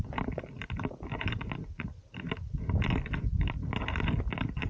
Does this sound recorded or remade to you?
recorded